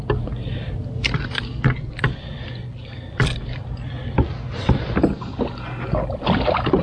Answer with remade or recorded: recorded